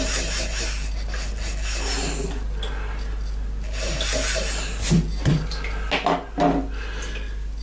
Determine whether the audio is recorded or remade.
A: recorded